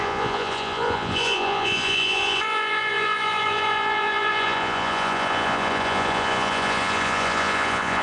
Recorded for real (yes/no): no